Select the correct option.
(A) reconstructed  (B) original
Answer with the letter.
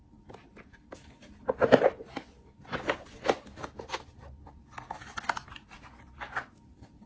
B